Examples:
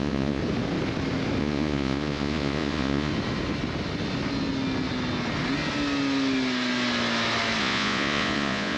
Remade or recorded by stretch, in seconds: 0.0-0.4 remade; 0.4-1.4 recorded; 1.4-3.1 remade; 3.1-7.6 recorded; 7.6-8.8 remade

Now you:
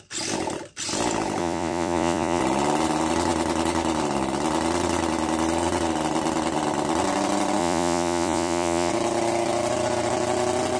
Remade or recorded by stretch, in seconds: 0.0-1.4 recorded; 1.4-2.4 remade; 2.4-7.6 recorded; 7.6-8.9 remade; 8.9-10.8 recorded

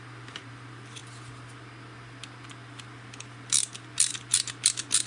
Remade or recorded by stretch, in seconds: 0.0-5.1 recorded

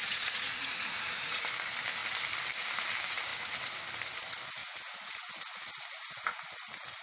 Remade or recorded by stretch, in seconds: 0.0-1.4 remade; 1.4-4.6 recorded; 4.6-5.3 remade; 5.3-7.0 recorded

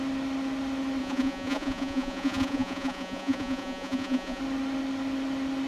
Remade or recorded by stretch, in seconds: 0.0-1.0 recorded; 1.0-4.4 remade; 4.4-5.7 recorded

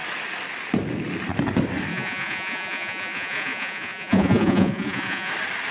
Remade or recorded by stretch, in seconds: 0.0-1.9 recorded; 1.9-5.3 remade; 5.3-5.7 recorded

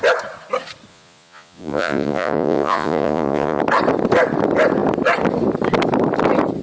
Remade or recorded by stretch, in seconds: 0.0-0.9 recorded; 0.9-3.6 remade; 3.6-6.6 recorded

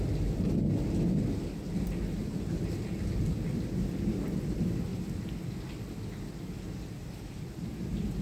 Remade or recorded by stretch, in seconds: 0.0-8.2 recorded